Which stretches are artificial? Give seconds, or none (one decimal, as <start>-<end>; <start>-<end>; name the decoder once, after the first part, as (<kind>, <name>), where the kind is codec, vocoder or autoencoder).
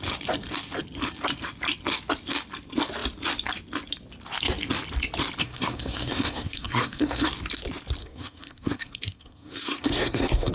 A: 5.4-7.3 (codec, SNAC); 8.0-10.5